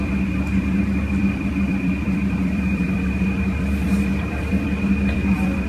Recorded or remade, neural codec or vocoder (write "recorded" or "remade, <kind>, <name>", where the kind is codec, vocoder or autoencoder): remade, vocoder, BigVGAN v2